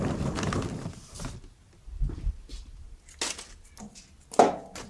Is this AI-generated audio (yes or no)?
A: no